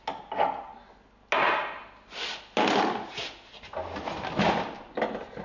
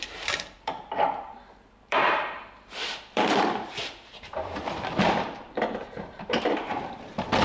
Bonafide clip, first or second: first